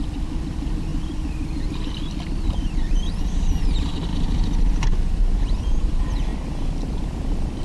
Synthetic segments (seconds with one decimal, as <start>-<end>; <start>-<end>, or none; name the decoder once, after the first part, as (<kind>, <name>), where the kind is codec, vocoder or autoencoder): 0.9-3.1 (vocoder, BigVGAN v2)